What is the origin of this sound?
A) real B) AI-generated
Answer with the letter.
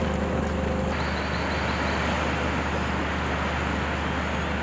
A